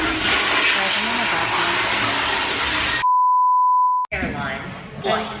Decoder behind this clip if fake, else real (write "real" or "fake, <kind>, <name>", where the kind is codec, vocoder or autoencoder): real